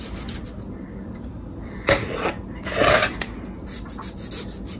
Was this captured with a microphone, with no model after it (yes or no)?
yes